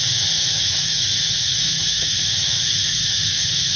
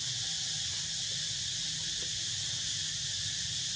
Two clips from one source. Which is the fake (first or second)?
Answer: first